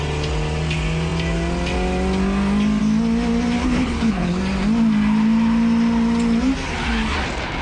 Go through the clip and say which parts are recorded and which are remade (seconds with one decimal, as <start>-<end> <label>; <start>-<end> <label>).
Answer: 0.0-3.6 recorded; 3.6-4.4 remade; 4.4-7.6 recorded